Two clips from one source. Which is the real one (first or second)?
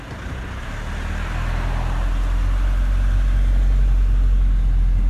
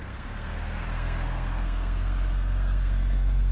first